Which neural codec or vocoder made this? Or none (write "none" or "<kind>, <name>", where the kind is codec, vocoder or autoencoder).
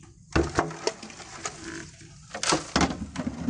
none